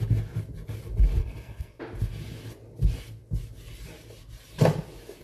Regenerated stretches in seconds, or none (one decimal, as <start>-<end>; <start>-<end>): 1.2-1.8